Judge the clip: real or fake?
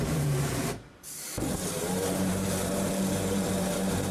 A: fake